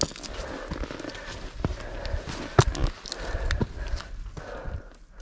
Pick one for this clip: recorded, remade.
recorded